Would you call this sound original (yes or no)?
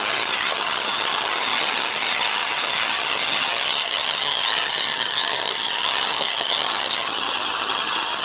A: no